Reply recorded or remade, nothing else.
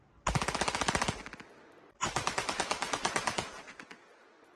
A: recorded